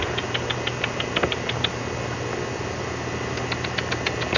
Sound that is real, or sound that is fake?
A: real